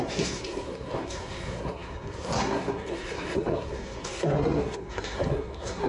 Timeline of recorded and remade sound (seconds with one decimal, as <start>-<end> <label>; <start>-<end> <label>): 0.0-5.9 remade